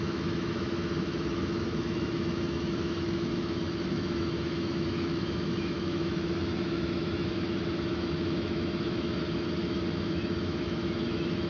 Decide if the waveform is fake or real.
fake